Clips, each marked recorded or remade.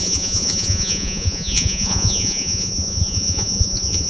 remade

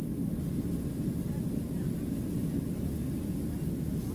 recorded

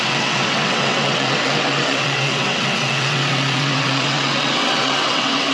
remade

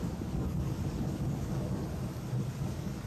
remade